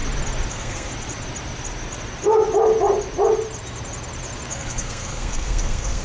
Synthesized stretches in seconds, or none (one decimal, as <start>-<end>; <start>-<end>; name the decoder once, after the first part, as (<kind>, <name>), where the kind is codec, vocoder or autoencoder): 0.5-0.9 (codec, SNAC); 4.5-6.0